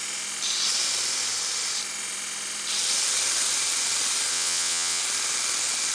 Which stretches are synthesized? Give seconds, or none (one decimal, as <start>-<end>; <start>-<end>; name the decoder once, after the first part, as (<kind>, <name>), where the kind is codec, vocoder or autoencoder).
4.3-5.0 (vocoder, WaveNeXt)